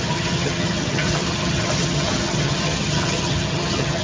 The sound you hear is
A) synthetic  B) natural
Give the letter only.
A